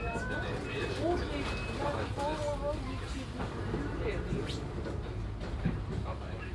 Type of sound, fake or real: real